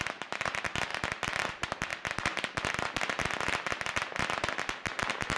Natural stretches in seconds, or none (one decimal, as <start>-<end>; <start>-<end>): 0.0-5.4